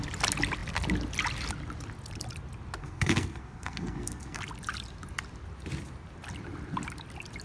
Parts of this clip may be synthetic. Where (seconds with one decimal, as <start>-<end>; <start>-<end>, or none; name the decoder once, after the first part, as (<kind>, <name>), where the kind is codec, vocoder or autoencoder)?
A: 2.8-4.4 (codec, SNAC)